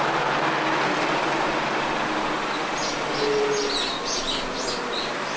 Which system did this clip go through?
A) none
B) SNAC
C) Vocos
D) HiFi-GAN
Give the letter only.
A